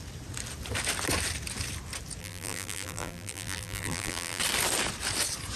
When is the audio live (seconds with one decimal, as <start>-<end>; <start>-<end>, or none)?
0.0-2.2; 4.4-5.6